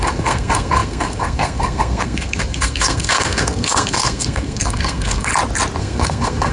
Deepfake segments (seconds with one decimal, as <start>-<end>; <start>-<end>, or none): 0.0-5.3; 5.8-6.5